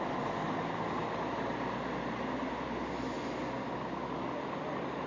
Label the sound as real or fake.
real